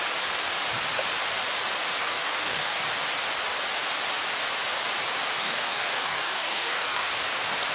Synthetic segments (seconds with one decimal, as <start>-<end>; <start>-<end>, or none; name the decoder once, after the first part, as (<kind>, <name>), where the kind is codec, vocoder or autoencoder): 2.0-2.8 (codec, DAC); 5.4-7.1